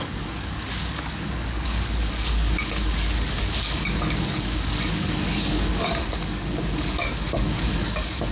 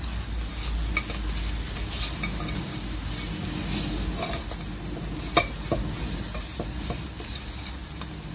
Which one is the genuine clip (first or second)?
second